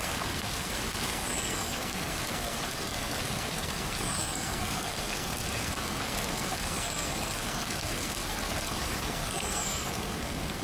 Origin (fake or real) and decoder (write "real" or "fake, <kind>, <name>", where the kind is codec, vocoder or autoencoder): fake, codec, SNAC